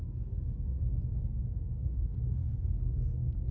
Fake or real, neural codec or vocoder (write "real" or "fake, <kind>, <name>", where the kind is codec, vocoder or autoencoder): fake, codec, SNAC